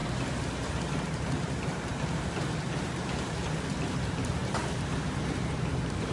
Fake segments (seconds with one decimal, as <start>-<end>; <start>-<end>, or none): 1.1-6.1